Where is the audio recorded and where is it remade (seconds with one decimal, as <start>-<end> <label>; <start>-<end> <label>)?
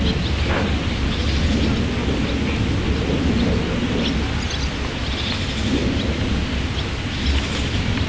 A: 0.0-8.1 recorded